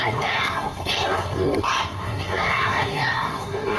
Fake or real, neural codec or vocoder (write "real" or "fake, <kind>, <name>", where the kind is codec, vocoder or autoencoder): fake, codec, SNAC